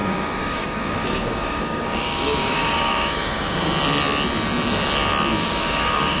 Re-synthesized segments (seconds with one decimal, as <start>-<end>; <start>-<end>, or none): 0.0-3.7; 5.4-6.2